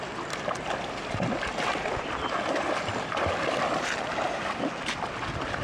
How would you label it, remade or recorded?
recorded